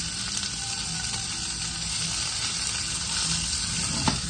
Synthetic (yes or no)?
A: no